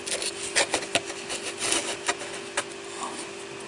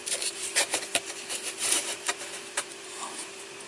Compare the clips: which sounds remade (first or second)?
second